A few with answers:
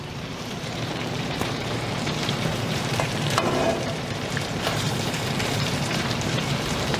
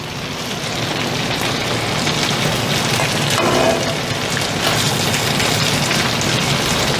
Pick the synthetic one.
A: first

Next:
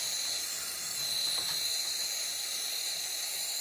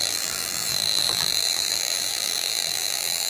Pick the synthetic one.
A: second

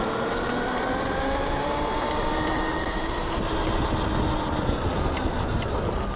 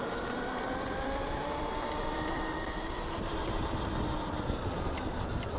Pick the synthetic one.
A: second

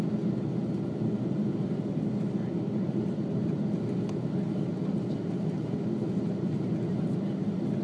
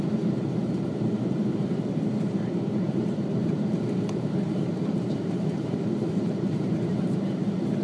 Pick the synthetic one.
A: second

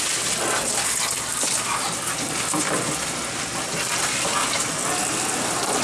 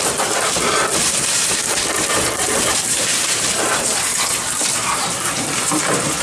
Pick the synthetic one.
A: second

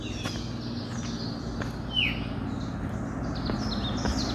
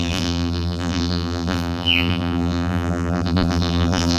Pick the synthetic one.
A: second